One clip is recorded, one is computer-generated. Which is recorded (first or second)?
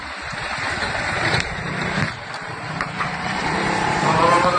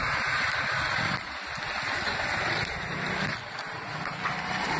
second